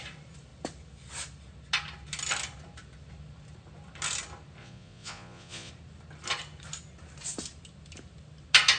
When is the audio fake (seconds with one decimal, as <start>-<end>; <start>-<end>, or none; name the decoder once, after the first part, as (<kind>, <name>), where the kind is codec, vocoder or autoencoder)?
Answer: 4.6-5.7 (vocoder, Vocos)